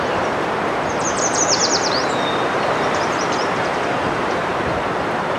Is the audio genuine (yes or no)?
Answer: no